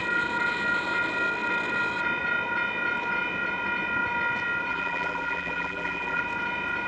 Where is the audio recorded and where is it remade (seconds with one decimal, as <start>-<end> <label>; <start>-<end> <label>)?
0.0-4.7 recorded; 4.7-6.2 remade; 6.2-6.9 recorded